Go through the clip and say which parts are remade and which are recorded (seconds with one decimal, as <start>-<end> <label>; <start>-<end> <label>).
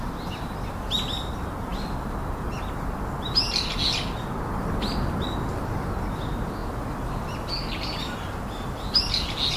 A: 0.0-9.6 recorded